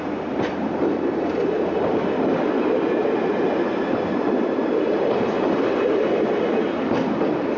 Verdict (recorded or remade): recorded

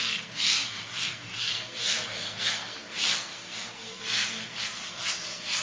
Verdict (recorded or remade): remade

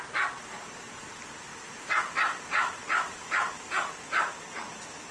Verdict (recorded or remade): recorded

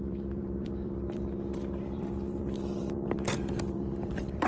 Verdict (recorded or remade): remade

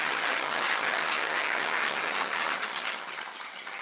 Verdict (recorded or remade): remade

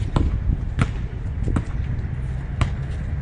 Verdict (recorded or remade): recorded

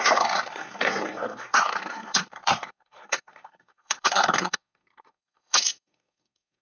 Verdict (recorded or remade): remade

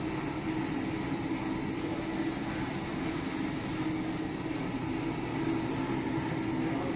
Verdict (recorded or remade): recorded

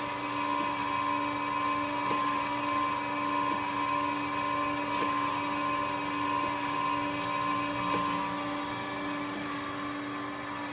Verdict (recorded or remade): recorded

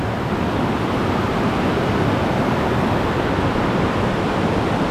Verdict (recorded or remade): recorded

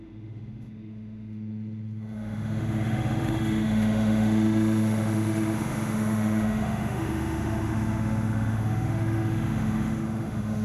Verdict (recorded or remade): remade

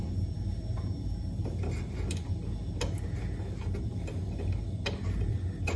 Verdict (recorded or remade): recorded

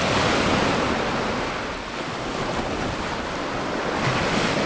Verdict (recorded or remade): recorded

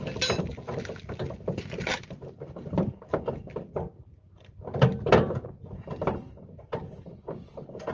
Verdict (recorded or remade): recorded